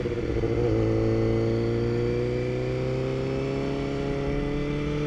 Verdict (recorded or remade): recorded